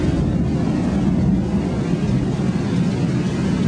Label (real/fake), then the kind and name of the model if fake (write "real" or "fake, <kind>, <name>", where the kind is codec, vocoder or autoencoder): real